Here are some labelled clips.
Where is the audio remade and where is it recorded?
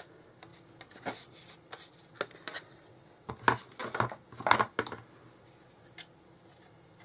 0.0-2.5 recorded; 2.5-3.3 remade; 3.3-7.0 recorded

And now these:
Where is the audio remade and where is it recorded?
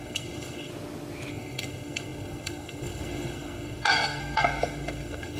0.0-0.7 remade; 0.7-1.3 recorded; 1.3-5.4 remade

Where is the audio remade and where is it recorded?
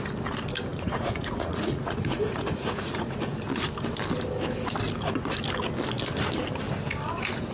0.0-0.7 recorded; 0.7-3.2 remade; 3.2-7.5 recorded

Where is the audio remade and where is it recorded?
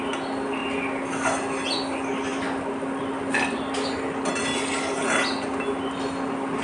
0.0-6.6 recorded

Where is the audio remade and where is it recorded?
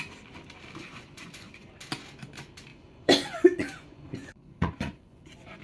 0.0-0.8 recorded; 0.8-1.7 remade; 1.7-2.7 recorded; 2.7-5.6 remade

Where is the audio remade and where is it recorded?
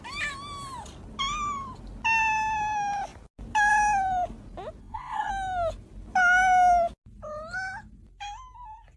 0.0-4.8 recorded; 4.8-5.3 remade; 5.3-9.0 recorded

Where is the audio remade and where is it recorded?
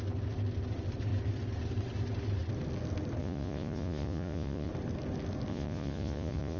0.0-3.2 recorded; 3.2-4.7 remade; 4.7-5.5 recorded; 5.5-6.6 remade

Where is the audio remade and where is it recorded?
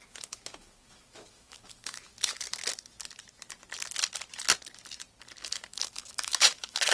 0.0-2.1 remade; 2.1-5.4 recorded; 5.4-6.9 remade